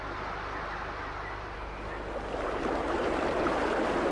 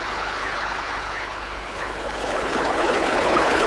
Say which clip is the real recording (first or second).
first